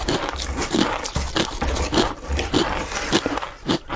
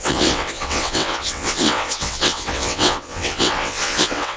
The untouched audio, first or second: first